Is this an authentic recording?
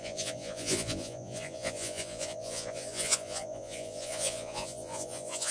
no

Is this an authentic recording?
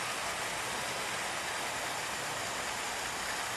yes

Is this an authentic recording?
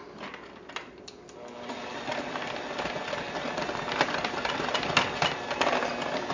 yes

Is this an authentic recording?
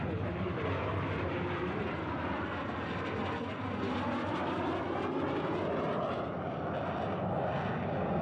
yes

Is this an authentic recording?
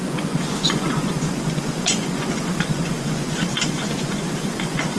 no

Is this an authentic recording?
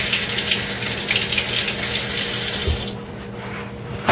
yes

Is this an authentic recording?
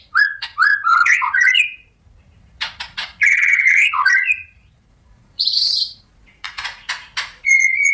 no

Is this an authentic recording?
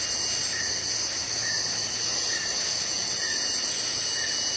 yes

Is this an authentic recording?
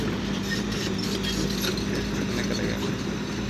yes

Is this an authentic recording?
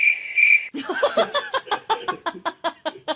yes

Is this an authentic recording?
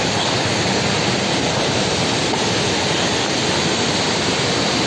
yes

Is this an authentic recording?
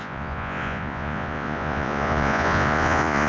no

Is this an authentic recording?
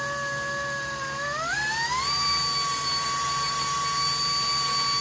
yes